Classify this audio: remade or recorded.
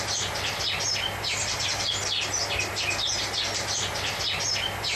recorded